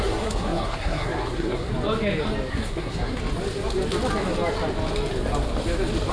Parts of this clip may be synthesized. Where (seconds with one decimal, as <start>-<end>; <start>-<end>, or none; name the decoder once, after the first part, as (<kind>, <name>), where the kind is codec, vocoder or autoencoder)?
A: 0.0-1.7 (codec, SNAC); 2.5-3.2